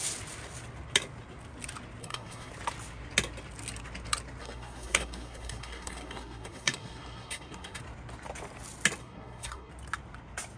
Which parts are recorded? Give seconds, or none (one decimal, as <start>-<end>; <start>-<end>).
0.0-2.0; 2.5-4.4; 7.8-9.0; 9.7-10.6